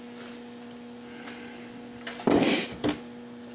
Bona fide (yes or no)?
yes